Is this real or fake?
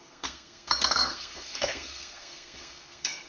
fake